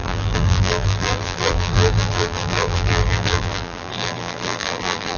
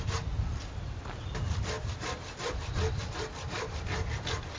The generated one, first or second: first